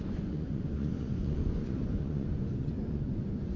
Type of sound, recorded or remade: remade